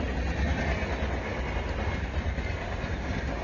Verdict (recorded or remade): recorded